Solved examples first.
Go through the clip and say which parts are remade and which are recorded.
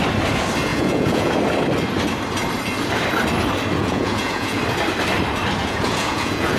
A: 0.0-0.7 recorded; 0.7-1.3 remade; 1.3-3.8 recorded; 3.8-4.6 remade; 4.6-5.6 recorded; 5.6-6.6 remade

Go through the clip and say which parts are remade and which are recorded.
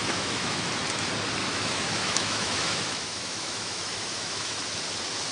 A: 0.0-0.7 remade; 0.7-1.4 recorded; 1.4-4.6 remade; 4.6-5.3 recorded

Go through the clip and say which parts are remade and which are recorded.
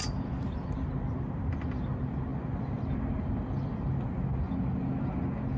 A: 0.0-5.6 recorded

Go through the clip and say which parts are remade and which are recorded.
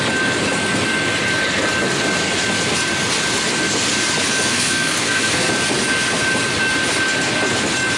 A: 0.0-4.5 recorded; 4.5-5.5 remade; 5.5-8.0 recorded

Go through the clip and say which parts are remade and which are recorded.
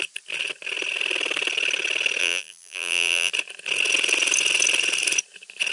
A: 0.0-2.2 recorded; 2.2-3.3 remade; 3.3-5.7 recorded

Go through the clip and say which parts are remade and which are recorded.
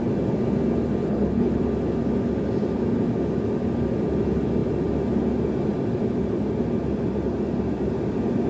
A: 0.0-1.0 recorded; 1.0-1.6 remade; 1.6-8.5 recorded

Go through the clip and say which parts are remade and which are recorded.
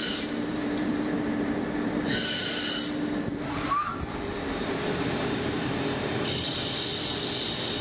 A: 0.0-1.5 remade; 1.5-3.9 recorded; 3.9-6.1 remade; 6.1-7.8 recorded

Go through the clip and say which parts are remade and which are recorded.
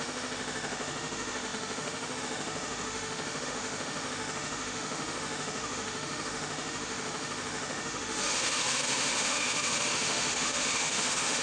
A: 0.0-11.4 remade